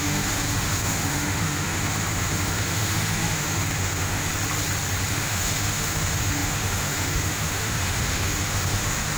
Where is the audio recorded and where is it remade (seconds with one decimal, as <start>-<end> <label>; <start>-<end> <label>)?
0.0-4.3 remade; 4.3-5.1 recorded; 5.1-9.2 remade